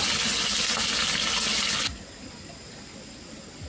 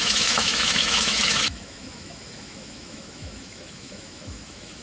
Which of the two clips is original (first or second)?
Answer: first